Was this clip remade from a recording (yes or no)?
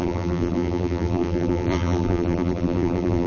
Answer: yes